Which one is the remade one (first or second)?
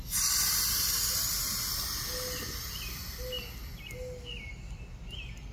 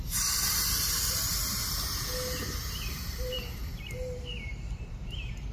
second